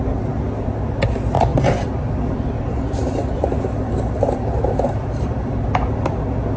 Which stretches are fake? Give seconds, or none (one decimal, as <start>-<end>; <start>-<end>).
1.5-5.5